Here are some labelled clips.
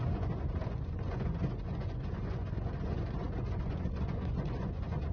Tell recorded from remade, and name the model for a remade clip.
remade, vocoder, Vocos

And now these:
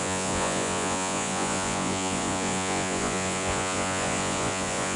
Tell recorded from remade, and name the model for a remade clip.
remade, vocoder, Vocos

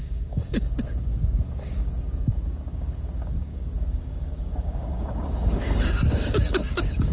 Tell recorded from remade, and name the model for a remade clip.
remade, codec, DAC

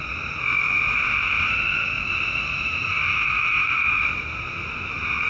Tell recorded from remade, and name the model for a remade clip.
remade, autoencoder, DAC-VAE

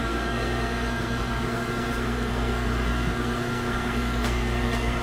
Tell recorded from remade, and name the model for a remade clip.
remade, codec, SNAC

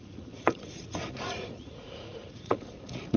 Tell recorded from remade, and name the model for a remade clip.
remade, vocoder, Vocos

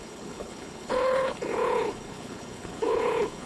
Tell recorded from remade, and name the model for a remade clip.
remade, codec, HILCodec